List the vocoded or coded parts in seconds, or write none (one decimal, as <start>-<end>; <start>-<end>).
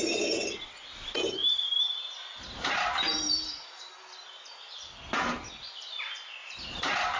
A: 1.4-3.9; 6.4-7.2